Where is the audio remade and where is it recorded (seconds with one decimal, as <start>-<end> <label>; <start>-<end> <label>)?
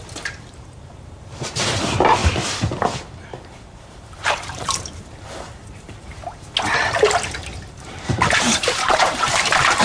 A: 0.0-2.2 remade; 2.2-3.3 recorded; 3.3-5.6 remade; 5.6-7.7 recorded; 7.7-9.8 remade